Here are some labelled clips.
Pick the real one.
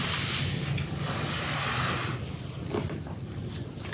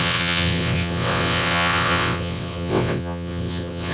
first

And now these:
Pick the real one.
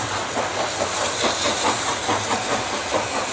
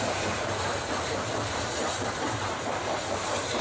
first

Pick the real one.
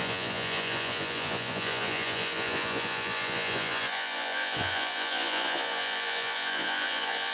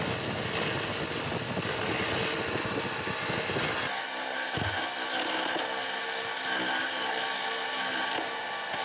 second